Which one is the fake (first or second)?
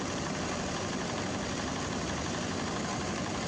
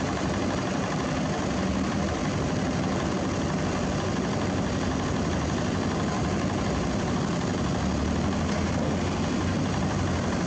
first